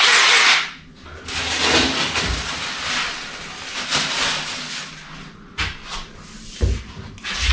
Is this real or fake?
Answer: real